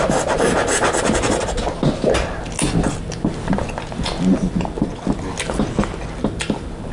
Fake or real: real